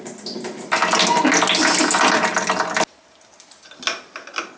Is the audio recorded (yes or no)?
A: yes